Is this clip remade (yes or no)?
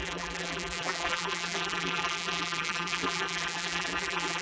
yes